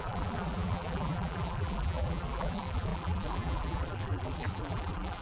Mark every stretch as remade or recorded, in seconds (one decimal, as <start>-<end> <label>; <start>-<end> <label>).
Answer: 0.0-5.2 remade